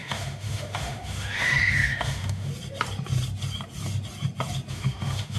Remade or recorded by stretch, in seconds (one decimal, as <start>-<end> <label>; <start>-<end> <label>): 0.0-2.5 remade; 2.5-4.7 recorded; 4.7-5.4 remade